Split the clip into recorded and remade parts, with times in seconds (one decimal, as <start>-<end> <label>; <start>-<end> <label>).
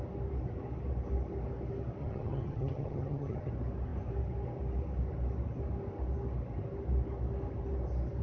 0.0-2.0 recorded; 2.0-3.5 remade; 3.5-8.2 recorded